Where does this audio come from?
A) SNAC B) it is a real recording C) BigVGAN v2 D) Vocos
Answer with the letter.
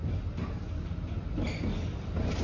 B